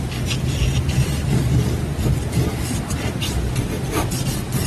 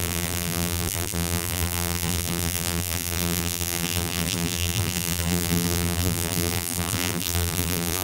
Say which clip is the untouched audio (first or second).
first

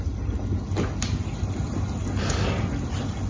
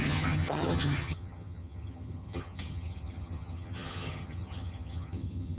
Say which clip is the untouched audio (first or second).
first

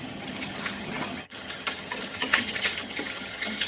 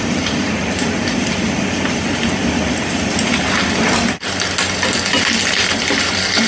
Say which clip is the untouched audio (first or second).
second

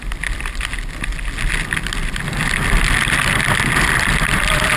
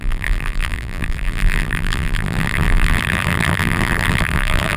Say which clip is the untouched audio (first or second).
first